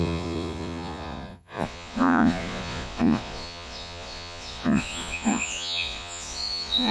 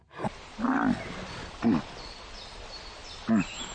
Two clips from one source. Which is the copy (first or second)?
first